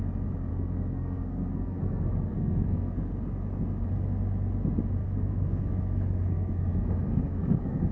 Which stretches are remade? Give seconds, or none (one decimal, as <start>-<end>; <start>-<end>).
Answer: 0.5-3.1; 5.0-7.9